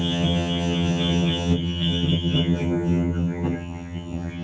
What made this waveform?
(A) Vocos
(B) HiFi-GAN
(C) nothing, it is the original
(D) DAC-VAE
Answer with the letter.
B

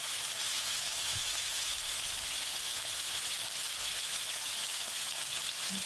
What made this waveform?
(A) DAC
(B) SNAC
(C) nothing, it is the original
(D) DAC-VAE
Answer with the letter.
D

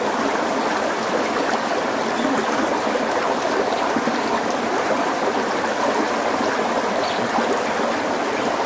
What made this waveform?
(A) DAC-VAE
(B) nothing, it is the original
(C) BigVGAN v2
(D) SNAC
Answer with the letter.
B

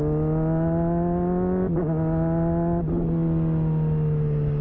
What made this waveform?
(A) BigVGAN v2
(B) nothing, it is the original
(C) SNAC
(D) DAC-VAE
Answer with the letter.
B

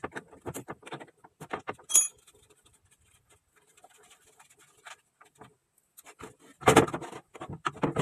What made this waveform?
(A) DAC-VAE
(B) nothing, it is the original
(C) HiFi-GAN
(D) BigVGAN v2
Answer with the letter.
B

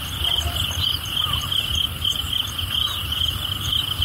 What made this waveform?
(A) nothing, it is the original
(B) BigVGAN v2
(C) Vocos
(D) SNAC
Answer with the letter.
A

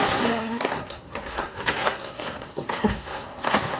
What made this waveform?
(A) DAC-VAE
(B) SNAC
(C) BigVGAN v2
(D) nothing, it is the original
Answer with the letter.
B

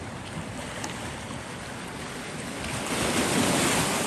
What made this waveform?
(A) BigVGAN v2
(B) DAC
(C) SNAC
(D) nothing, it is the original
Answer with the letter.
D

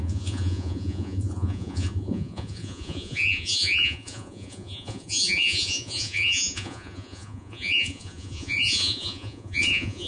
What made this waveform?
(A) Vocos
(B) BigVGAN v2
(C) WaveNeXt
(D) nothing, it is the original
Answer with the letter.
A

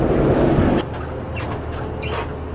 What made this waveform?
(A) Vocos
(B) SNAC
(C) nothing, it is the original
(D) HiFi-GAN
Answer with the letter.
C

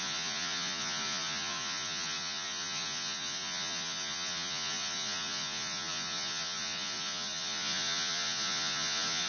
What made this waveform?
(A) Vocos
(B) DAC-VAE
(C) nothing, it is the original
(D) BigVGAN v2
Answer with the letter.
A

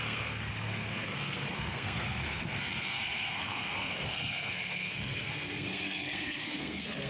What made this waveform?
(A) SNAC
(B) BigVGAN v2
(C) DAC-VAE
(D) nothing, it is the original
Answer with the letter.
A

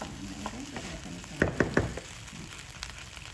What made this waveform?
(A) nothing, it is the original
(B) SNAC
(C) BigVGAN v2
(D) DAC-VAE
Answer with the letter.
A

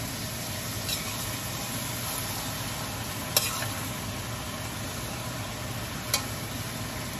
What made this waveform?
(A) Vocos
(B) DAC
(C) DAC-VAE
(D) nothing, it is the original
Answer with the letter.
D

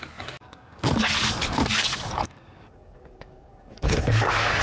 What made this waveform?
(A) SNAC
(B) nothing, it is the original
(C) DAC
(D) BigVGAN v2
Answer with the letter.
C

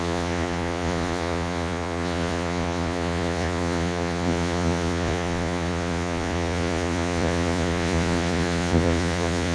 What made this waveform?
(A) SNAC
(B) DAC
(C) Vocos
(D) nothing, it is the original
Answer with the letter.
C